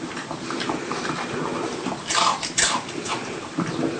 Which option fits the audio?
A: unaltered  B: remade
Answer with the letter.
A